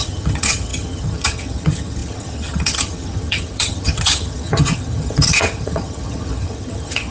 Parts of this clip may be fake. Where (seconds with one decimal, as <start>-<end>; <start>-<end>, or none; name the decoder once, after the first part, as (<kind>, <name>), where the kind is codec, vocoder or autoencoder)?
0.0-7.1 (vocoder, HiFi-GAN)